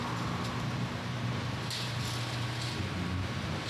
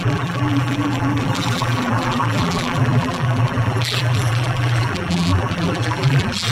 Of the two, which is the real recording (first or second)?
first